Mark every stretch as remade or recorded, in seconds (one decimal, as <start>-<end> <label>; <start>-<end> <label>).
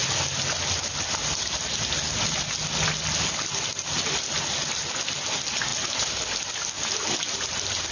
0.0-7.9 recorded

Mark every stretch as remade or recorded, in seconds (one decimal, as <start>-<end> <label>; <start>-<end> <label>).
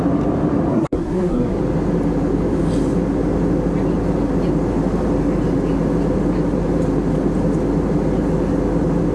0.0-0.7 recorded; 0.7-1.6 remade; 1.6-9.1 recorded